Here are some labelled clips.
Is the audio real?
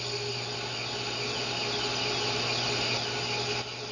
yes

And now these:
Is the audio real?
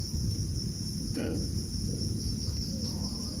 yes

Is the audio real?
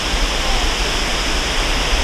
yes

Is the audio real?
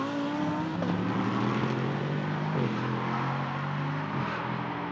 yes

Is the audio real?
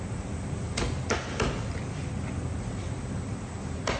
yes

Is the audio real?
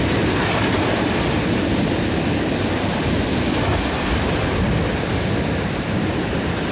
yes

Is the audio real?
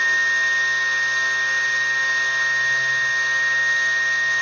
yes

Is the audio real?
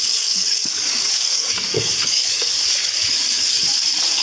no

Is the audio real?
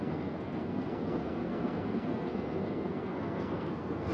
no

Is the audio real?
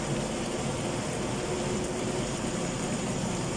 yes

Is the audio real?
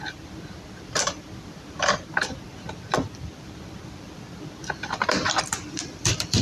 no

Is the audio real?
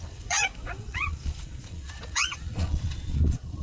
no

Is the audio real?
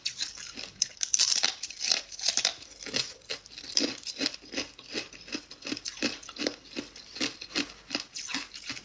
yes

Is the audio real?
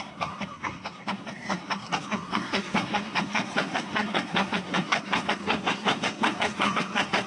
no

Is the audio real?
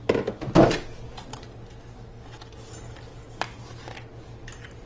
yes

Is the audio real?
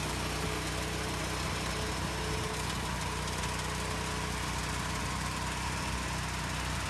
yes